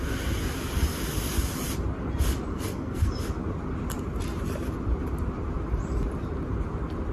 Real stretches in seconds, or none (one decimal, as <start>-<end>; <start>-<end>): 0.0-2.5; 3.1-7.1